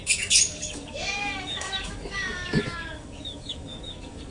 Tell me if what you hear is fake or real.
fake